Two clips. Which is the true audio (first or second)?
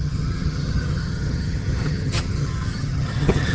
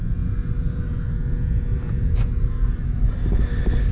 second